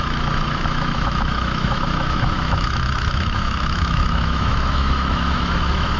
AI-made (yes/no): yes